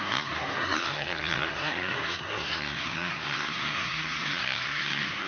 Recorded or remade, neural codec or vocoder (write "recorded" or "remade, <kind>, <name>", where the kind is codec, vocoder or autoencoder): remade, codec, SNAC